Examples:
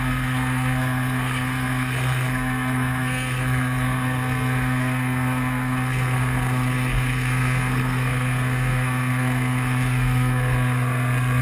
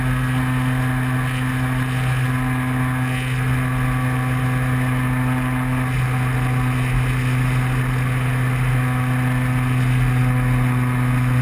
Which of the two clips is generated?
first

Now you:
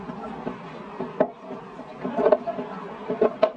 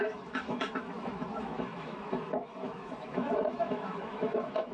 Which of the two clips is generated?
second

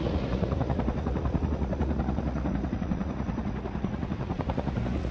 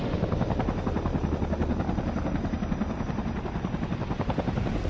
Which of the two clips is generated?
first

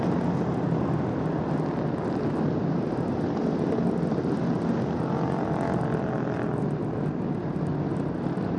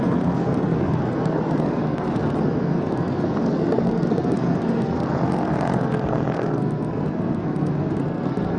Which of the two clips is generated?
second